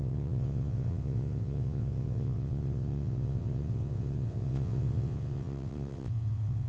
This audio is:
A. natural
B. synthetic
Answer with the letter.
B